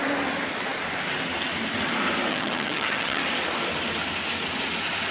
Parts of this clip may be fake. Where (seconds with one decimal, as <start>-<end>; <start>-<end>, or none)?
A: 2.3-3.2